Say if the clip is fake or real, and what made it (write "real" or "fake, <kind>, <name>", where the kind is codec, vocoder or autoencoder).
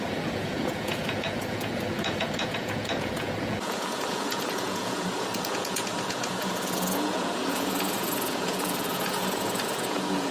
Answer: fake, vocoder, Vocos